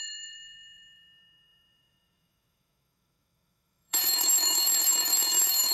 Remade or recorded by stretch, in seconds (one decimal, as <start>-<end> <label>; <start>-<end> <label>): 0.0-5.7 remade